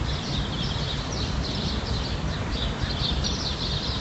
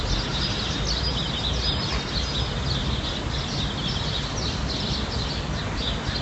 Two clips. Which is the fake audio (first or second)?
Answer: first